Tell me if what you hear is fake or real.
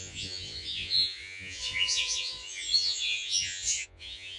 fake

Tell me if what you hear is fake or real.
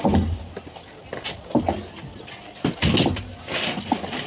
real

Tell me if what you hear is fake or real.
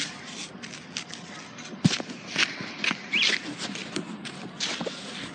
real